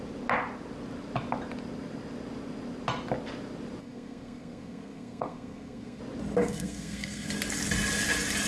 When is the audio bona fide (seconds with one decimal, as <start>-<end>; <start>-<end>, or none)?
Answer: 0.0-3.8; 6.0-6.4; 7.3-8.5